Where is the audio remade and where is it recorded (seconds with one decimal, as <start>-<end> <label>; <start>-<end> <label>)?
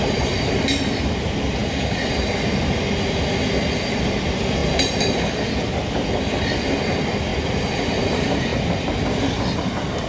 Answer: 0.0-10.1 recorded